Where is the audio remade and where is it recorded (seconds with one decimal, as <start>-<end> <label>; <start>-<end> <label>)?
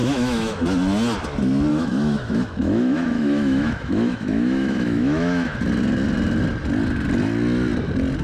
0.0-0.6 remade; 0.6-1.7 recorded; 1.7-5.6 remade; 5.6-8.2 recorded